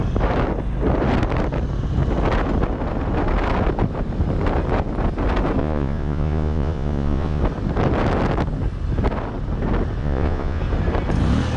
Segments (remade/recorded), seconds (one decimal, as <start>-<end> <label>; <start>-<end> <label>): 0.0-5.6 recorded; 5.6-7.4 remade; 7.4-10.0 recorded; 10.0-10.6 remade; 10.6-11.6 recorded